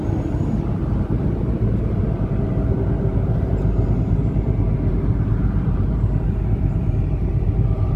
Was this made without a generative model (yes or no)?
no